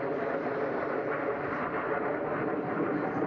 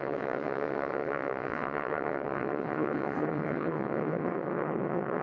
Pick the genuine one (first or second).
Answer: first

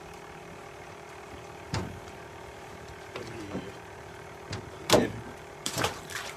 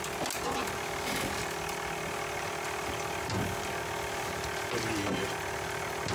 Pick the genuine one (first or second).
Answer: second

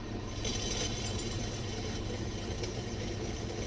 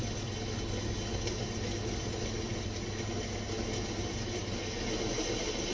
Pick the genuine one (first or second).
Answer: second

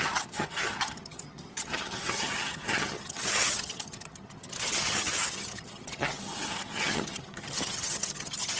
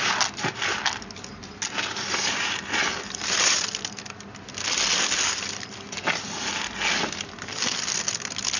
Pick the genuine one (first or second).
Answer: second